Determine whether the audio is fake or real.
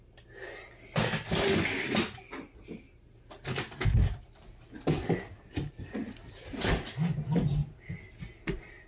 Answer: real